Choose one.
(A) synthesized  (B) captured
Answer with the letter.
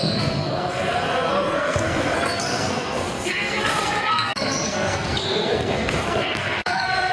A